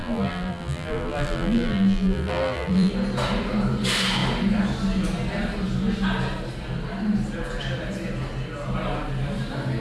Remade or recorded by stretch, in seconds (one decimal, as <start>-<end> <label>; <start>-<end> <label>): 0.0-2.9 remade; 2.9-9.8 recorded